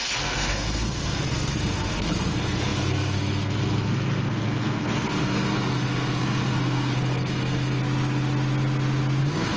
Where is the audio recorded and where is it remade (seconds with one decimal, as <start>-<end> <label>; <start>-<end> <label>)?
0.0-7.8 remade; 7.8-9.2 recorded; 9.2-9.6 remade